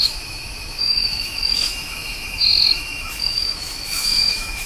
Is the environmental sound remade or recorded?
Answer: remade